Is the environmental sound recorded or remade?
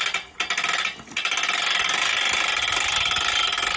recorded